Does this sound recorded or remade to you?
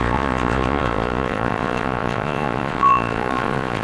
remade